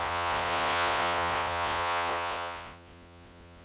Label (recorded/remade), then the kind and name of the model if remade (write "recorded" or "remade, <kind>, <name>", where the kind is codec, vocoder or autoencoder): remade, vocoder, Vocos